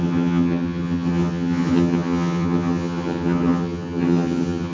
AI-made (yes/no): yes